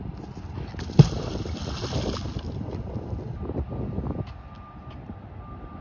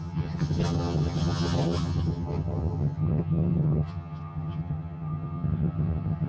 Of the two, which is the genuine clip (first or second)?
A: first